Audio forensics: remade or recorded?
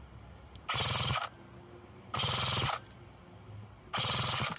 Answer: recorded